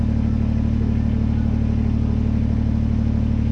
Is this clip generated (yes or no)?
no